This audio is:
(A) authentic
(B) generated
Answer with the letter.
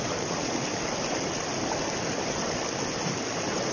A